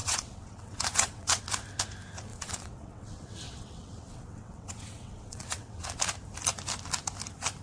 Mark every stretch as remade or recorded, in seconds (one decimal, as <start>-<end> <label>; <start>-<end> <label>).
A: 0.0-1.4 remade; 1.4-2.3 recorded; 2.3-6.0 remade; 6.0-7.6 recorded